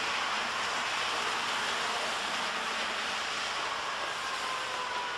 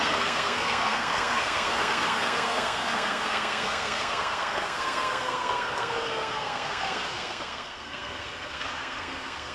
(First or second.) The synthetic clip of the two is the second